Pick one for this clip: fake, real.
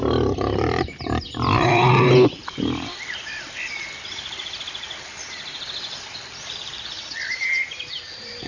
fake